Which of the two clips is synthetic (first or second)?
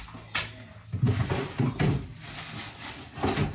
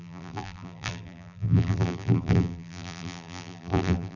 second